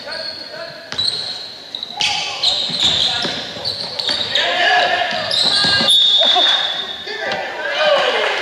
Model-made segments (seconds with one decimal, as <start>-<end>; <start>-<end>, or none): 3.0-6.5